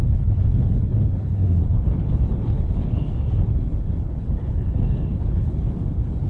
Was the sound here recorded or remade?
remade